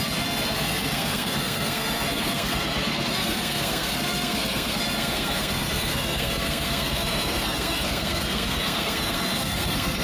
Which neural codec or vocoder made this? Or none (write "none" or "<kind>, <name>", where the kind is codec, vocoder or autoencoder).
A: codec, SNAC